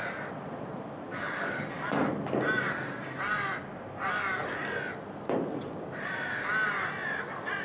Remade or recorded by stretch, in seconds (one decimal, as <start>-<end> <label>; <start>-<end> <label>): 0.0-1.1 recorded; 1.1-1.7 remade; 1.7-7.6 recorded